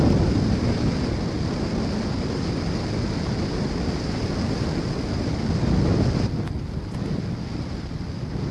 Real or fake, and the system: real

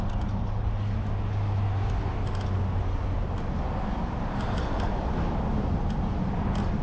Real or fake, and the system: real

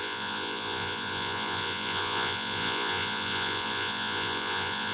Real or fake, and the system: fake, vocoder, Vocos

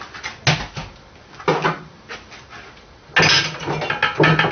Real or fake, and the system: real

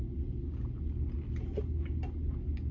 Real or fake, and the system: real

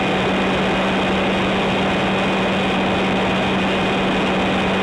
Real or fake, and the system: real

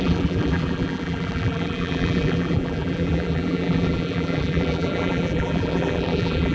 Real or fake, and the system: fake, vocoder, BigVGAN v2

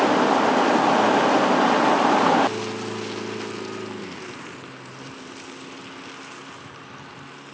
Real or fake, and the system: real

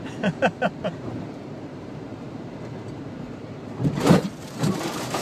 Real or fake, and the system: fake, vocoder, BigVGAN v2